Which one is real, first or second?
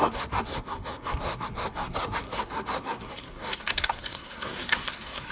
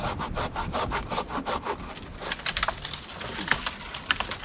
second